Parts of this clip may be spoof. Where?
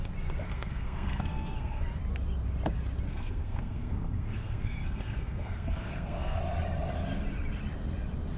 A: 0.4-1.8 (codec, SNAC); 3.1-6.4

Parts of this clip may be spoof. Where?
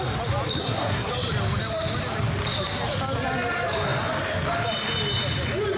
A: 0.6-1.1 (codec, SNAC)